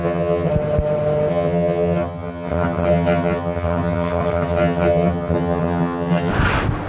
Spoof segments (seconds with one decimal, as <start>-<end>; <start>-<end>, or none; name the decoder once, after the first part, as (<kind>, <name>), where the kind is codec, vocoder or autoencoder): 0.0-0.5 (vocoder, HiFi-GAN); 1.3-6.3